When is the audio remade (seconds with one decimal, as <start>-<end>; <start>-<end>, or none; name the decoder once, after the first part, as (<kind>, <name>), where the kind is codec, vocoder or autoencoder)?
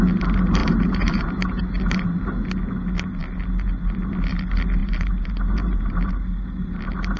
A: 0.6-1.6 (vocoder, BigVGAN v2); 4.8-6.1